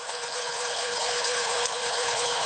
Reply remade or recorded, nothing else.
remade